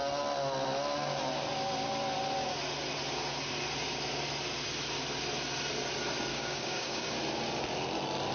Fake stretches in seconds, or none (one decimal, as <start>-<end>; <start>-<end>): 6.3-7.1